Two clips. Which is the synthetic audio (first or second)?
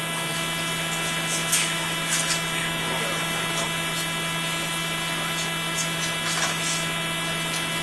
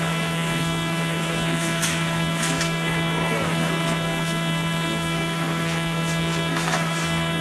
second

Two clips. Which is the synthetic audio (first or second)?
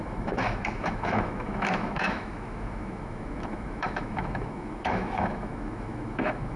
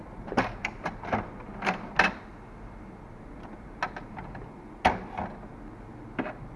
first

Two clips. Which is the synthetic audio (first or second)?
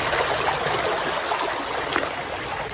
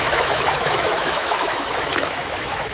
second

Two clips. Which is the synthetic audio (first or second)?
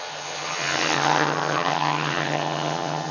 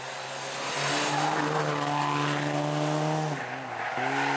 first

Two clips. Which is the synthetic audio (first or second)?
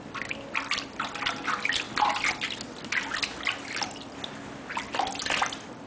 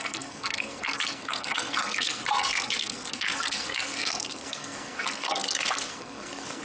second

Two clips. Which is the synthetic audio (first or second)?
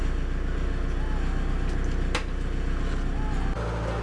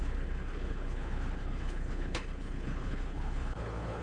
second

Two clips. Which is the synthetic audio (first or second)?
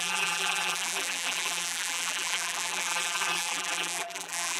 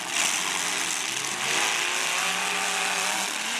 first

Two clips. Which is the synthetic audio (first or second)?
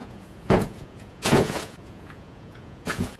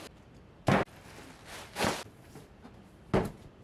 first